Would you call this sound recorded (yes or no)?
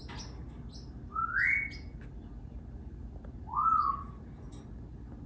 yes